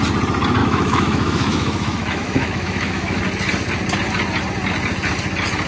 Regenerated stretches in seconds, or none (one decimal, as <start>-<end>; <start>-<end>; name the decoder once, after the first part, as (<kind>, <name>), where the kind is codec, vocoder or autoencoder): 0.6-3.2 (autoencoder, DAC-VAE)